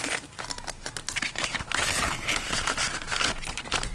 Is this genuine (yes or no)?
yes